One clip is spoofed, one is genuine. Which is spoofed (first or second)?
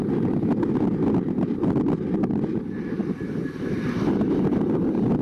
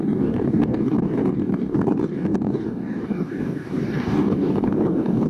second